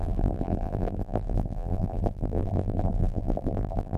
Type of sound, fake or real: fake